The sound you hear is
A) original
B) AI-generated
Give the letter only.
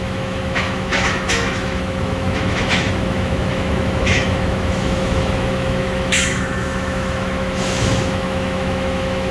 B